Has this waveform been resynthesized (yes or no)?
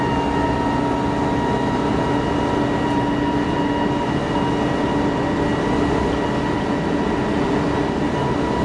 no